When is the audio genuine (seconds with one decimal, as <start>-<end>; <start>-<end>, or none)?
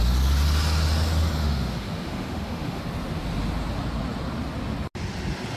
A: 0.0-1.4; 2.8-5.6